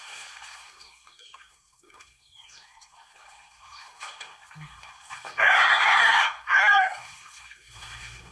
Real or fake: fake